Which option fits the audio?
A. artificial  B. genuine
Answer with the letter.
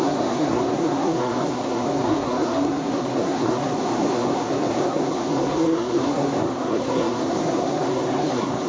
A